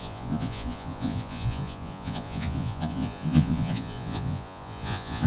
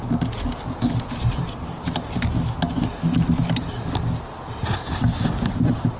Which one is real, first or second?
second